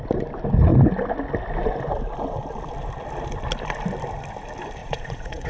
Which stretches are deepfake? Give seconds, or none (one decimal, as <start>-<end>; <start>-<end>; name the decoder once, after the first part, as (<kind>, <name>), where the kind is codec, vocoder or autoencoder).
4.8-5.5 (vocoder, Vocos)